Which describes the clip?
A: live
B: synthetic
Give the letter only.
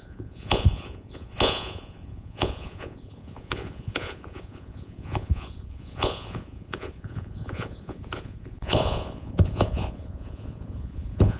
B